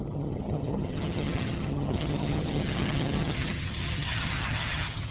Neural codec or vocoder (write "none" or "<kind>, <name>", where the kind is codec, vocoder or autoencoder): vocoder, HiFi-GAN